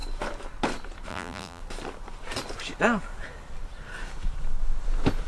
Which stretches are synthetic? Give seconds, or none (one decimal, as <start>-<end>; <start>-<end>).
1.1-1.6